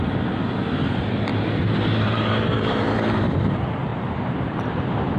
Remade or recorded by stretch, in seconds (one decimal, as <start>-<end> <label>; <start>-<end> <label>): 0.0-1.3 recorded; 1.3-3.3 remade; 3.3-3.9 recorded; 3.9-4.8 remade; 4.8-5.2 recorded